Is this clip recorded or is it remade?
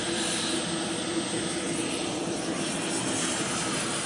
recorded